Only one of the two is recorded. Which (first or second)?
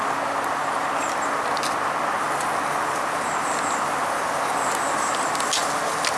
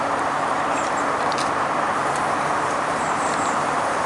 first